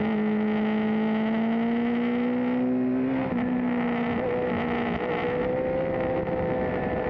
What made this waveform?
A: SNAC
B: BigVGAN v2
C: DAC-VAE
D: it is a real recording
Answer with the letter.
D